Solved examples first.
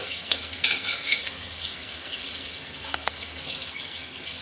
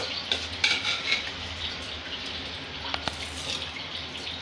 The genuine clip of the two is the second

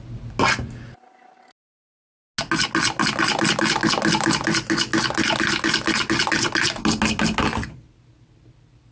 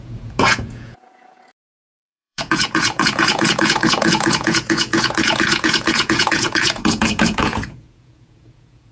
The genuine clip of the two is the first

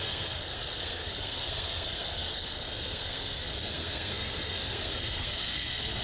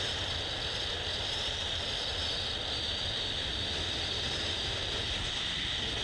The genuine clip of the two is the second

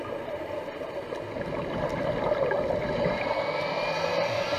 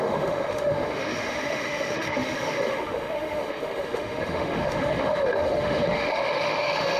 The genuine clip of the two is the first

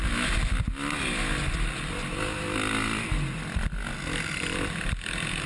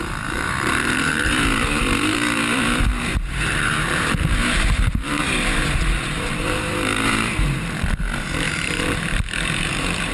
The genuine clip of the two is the first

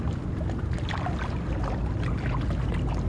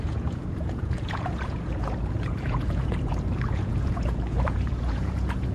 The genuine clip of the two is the first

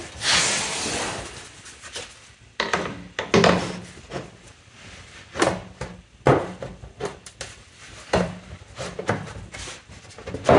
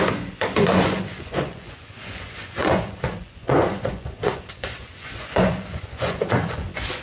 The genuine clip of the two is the first